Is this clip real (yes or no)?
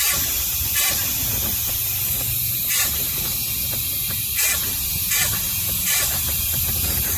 no